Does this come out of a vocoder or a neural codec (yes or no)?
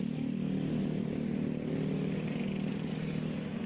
no